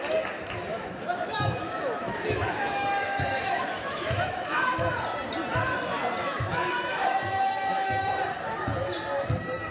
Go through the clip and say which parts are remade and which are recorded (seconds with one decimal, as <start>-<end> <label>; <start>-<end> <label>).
0.0-0.7 recorded; 0.7-4.7 remade; 4.7-6.2 recorded; 6.2-8.1 remade; 8.1-9.7 recorded